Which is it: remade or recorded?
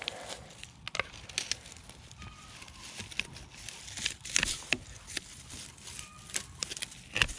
recorded